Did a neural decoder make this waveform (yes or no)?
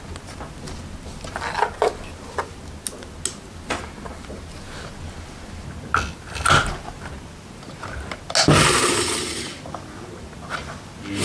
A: no